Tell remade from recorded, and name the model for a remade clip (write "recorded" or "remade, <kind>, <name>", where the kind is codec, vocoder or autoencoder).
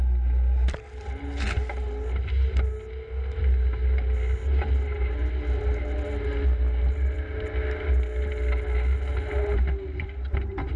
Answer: recorded